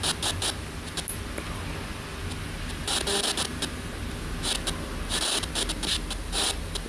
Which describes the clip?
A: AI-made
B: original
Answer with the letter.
B